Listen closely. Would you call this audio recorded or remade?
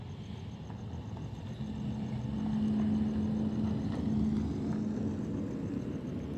recorded